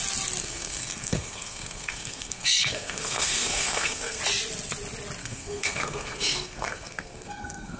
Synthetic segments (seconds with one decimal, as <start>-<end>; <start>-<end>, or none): 0.4-4.2; 5.2-7.8